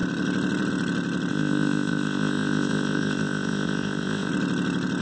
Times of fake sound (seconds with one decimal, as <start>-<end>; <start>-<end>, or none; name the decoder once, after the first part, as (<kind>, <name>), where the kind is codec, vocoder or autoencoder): 1.3-4.3 (codec, ZipCodec)